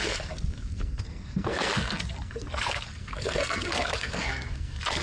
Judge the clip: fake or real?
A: fake